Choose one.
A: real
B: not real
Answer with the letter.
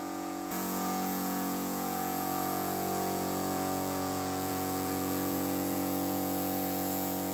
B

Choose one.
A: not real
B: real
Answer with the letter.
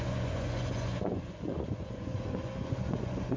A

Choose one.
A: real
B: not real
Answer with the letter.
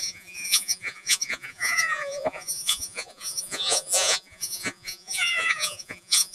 B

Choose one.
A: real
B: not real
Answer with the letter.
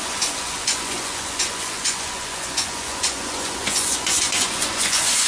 B